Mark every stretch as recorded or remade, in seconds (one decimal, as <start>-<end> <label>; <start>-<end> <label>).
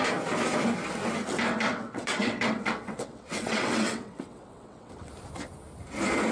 0.0-1.5 recorded; 1.5-5.1 remade; 5.1-6.3 recorded